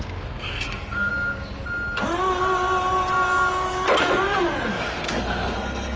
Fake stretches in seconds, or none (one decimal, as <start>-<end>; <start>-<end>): 0.0-1.1; 4.7-6.0